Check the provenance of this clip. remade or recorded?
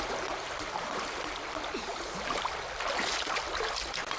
recorded